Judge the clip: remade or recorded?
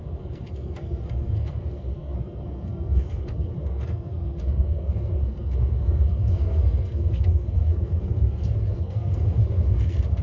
remade